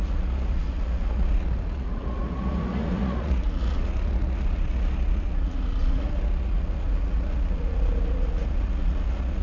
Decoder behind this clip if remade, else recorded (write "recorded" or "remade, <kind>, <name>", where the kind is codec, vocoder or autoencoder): remade, vocoder, Vocos